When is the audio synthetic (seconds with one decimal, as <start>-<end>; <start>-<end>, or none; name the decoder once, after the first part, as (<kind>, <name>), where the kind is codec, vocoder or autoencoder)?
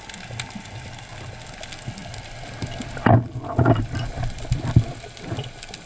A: none